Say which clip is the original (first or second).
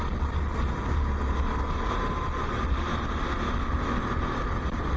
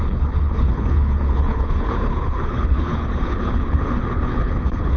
first